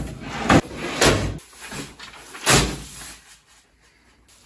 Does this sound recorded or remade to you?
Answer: recorded